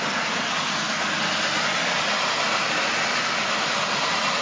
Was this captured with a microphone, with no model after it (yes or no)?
yes